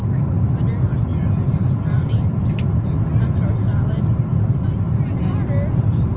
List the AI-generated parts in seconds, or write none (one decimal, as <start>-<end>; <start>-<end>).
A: none